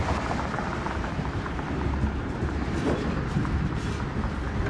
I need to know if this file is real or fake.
real